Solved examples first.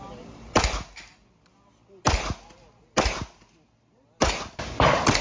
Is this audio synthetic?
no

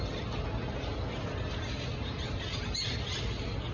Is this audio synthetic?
no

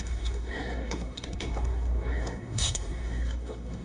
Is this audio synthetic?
yes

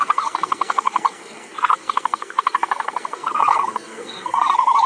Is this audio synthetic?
yes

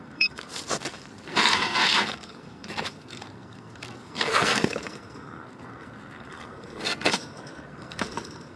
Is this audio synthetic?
yes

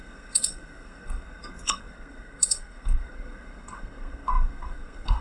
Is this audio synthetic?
yes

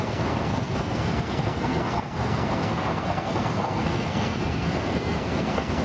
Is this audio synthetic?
yes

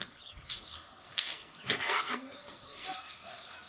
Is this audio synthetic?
yes